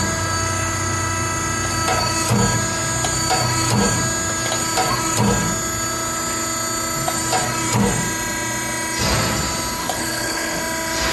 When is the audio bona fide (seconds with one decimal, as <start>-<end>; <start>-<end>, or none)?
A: 0.0-9.8; 10.6-11.1